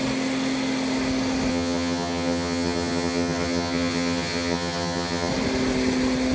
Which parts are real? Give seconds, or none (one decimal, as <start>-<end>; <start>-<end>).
0.0-1.5; 5.3-6.3